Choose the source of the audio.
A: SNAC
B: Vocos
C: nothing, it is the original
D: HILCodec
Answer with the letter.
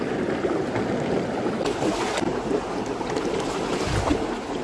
C